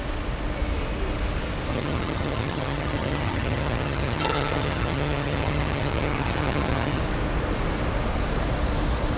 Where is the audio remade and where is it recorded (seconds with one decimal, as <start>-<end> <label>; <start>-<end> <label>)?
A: 0.0-1.7 recorded; 1.7-7.0 remade; 7.0-9.2 recorded